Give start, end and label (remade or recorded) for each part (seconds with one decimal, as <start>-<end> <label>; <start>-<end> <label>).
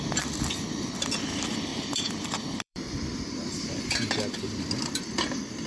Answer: 0.0-5.7 remade